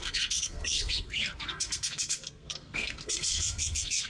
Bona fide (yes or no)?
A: no